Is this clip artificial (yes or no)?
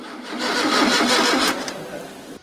no